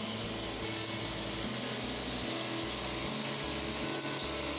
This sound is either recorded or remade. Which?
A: recorded